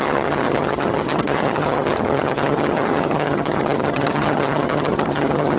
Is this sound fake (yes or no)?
yes